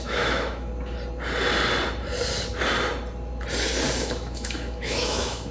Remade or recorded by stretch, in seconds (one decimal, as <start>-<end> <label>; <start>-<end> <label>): 0.0-0.7 remade; 0.7-4.0 recorded; 4.0-5.5 remade